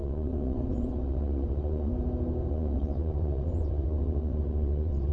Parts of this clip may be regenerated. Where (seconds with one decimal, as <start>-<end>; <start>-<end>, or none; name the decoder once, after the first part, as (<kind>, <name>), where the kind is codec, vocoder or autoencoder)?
0.0-1.9 (vocoder, WaveNeXt); 2.5-5.1